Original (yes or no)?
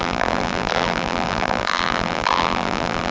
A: no